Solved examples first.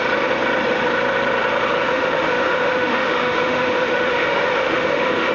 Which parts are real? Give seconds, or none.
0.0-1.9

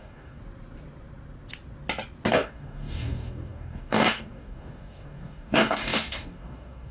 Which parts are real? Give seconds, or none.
0.4-2.3